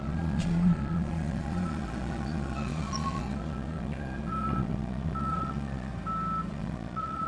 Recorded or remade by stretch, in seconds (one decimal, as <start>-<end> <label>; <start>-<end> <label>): 0.0-5.9 remade; 5.9-6.5 recorded; 6.5-7.3 remade